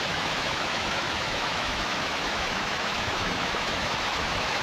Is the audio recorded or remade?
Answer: remade